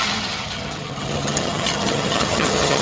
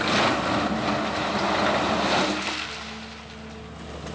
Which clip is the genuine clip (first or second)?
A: second